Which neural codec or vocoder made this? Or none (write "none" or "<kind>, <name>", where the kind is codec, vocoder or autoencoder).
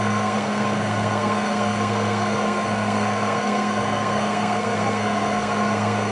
codec, SNAC